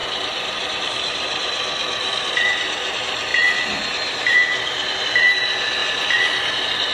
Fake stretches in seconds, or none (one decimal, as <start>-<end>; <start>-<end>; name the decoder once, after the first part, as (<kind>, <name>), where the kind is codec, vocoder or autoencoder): 0.0-3.3 (vocoder, BigVGAN v2); 4.9-6.9